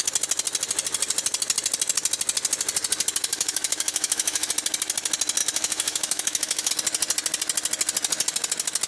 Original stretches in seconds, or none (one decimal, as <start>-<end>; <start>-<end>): 0.0-3.3; 4.5-5.4; 6.7-8.9